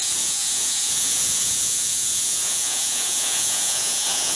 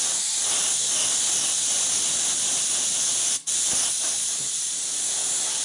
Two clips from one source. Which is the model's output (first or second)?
first